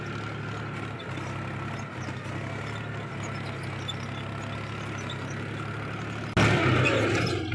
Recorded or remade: recorded